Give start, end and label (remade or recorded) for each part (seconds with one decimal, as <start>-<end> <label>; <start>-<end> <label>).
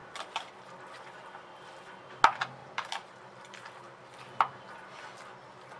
0.0-2.0 remade; 2.0-2.6 recorded; 2.6-4.8 remade; 4.8-5.8 recorded